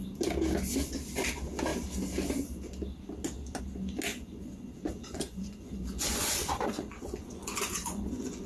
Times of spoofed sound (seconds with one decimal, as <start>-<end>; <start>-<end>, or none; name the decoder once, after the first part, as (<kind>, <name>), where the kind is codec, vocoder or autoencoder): 4.1-8.5 (vocoder, Vocos)